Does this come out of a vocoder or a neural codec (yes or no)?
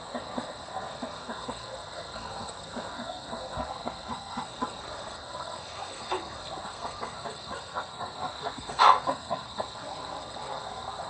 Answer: yes